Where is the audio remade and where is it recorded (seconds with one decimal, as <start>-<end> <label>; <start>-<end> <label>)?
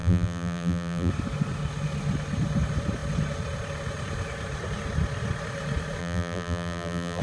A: 0.0-1.1 remade; 1.1-6.0 recorded; 6.0-7.2 remade